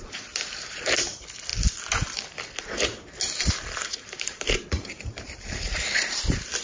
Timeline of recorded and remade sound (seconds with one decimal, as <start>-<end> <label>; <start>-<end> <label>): 0.0-1.5 remade; 1.5-3.4 recorded; 3.4-6.6 remade